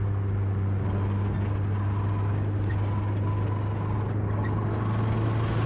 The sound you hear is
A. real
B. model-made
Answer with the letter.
A